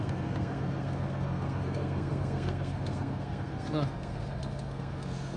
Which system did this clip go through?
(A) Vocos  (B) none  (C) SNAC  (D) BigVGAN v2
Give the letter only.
C